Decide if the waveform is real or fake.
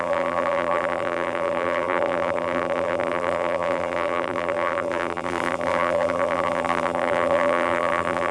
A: fake